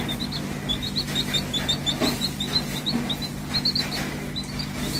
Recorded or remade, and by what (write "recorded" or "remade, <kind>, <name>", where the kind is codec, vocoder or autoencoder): recorded